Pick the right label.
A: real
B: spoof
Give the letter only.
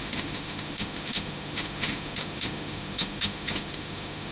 B